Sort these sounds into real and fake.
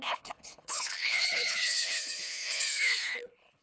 fake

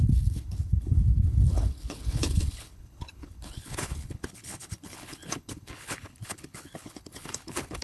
fake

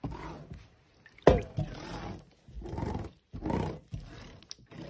real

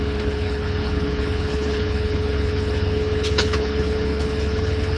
fake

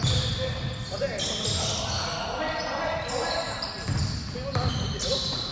real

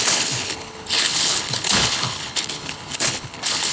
fake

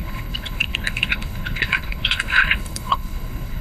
fake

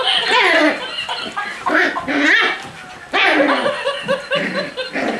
real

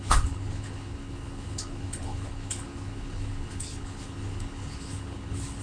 fake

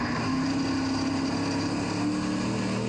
real